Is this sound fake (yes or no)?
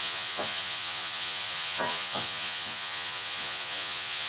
yes